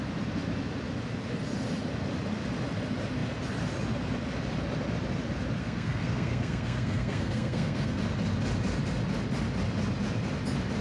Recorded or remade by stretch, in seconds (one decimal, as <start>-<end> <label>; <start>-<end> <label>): 0.0-5.6 recorded; 5.6-8.0 remade; 8.0-10.8 recorded